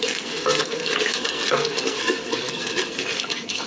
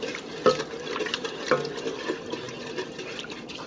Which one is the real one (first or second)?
second